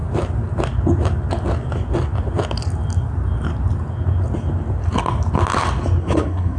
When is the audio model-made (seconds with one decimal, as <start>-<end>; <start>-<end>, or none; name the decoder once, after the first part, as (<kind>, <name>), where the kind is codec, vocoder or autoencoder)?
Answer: 6.0-6.6 (codec, SNAC)